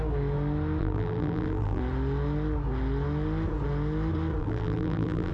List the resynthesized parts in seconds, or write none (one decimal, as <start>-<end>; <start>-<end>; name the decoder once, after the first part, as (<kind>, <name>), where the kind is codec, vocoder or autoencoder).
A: 0.8-1.8 (vocoder, BigVGAN v2); 4.4-5.3